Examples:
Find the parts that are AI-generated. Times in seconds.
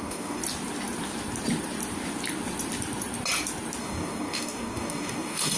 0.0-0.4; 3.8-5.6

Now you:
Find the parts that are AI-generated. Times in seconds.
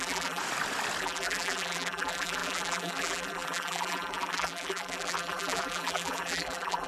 0.0-0.4; 1.0-6.9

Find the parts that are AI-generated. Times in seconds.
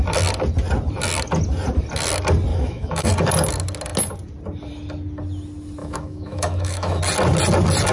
2.5-3.1; 5.8-7.0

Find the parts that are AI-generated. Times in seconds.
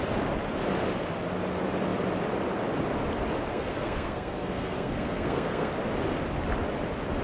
3.5-5.7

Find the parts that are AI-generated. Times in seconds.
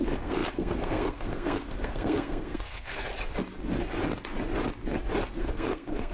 0.0-3.1; 5.4-6.1